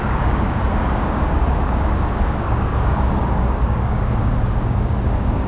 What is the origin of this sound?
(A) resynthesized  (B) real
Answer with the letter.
A